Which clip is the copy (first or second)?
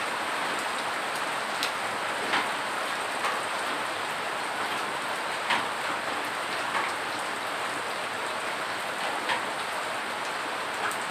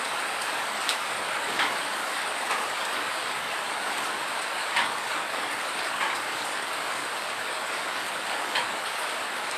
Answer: second